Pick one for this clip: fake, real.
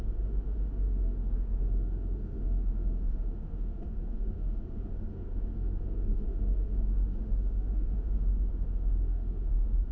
fake